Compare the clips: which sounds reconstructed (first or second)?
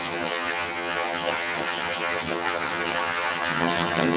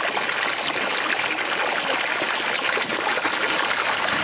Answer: first